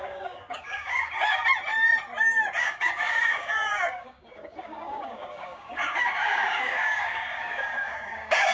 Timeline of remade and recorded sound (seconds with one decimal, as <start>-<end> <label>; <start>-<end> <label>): 0.0-1.4 remade; 1.4-2.6 recorded; 2.6-8.5 remade